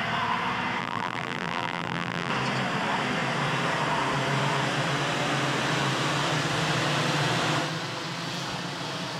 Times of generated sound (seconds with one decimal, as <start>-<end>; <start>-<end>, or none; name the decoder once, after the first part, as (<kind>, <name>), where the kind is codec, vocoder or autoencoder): 0.8-2.3 (vocoder, BigVGAN v2)